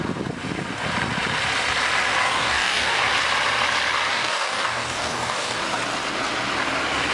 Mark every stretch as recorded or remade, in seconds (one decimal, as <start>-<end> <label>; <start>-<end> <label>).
0.0-2.2 recorded; 2.2-3.0 remade; 3.0-4.1 recorded; 4.1-5.6 remade; 5.6-7.1 recorded